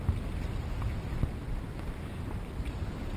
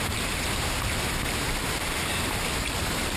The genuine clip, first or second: first